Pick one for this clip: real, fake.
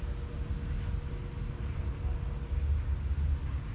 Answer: real